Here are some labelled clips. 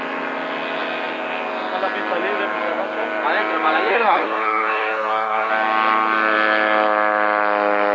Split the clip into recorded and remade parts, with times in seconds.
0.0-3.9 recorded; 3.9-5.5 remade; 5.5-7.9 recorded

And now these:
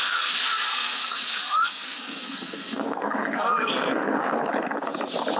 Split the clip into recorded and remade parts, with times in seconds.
0.0-4.5 remade; 4.5-5.4 recorded

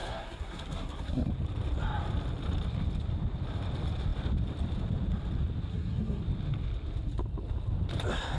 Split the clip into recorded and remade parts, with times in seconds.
0.0-1.3 remade; 1.3-5.7 recorded; 5.7-6.2 remade; 6.2-8.4 recorded

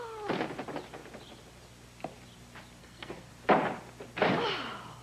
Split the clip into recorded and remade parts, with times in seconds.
0.0-2.8 recorded; 2.8-3.3 remade; 3.3-5.0 recorded